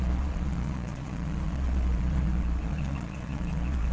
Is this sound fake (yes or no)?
yes